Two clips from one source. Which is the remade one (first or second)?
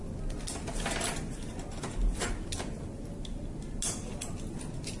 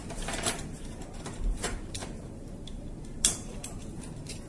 second